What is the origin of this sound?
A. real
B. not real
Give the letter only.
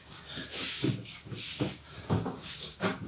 B